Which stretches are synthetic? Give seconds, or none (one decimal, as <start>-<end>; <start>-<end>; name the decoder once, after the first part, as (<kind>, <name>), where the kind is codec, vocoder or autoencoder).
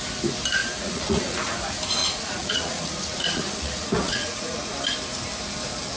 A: 0.6-1.6 (vocoder, Vocos); 2.0-4.7